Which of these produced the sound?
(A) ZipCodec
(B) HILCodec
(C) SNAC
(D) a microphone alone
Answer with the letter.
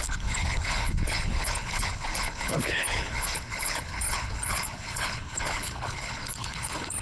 B